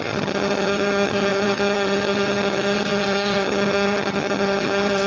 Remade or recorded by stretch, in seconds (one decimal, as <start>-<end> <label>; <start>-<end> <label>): 0.0-5.1 remade